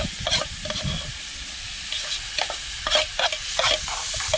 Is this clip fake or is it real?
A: real